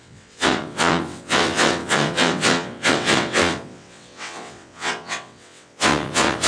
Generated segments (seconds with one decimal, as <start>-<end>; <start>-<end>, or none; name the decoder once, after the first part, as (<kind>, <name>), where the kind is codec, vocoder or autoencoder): 0.0-6.5 (vocoder, WaveNeXt)